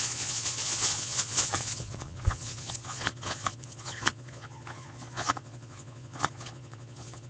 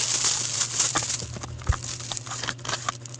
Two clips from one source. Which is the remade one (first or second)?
first